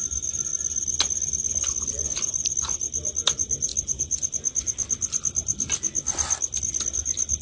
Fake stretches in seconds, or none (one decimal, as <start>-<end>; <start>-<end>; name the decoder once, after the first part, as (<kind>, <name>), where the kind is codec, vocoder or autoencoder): none